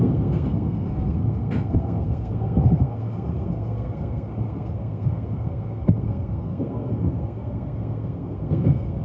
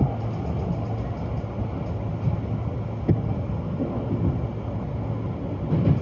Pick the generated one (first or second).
first